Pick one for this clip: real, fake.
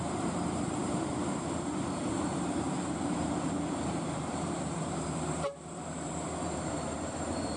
fake